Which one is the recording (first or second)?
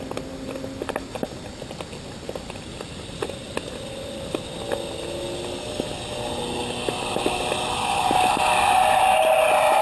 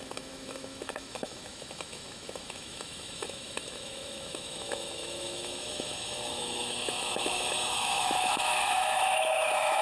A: first